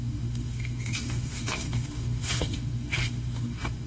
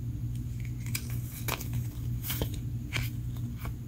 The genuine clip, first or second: second